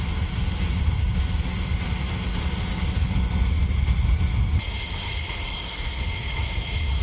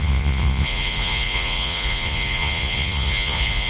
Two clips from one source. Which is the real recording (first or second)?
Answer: first